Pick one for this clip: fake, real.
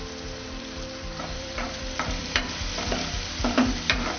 fake